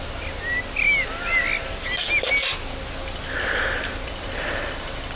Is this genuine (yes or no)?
yes